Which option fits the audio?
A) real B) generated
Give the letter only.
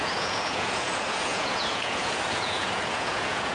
B